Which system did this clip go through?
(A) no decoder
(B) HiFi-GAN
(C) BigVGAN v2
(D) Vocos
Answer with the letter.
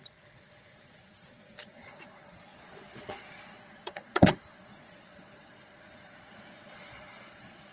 D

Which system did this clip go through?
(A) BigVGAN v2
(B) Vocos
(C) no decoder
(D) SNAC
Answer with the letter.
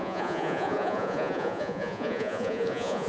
B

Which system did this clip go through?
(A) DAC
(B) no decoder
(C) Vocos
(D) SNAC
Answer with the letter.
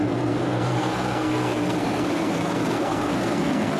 D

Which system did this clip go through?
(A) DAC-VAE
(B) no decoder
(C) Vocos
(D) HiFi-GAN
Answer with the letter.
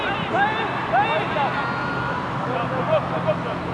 B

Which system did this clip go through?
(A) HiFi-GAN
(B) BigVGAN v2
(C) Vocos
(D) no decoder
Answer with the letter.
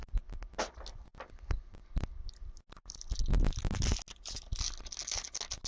D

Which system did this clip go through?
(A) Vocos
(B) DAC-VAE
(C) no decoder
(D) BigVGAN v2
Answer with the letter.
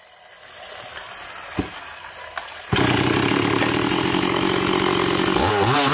C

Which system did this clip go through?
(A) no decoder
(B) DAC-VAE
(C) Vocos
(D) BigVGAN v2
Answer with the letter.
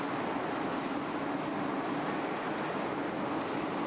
A